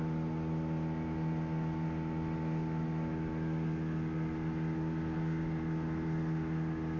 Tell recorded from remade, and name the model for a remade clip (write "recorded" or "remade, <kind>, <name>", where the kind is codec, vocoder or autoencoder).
recorded